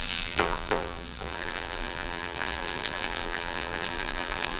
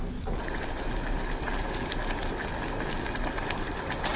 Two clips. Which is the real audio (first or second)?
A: second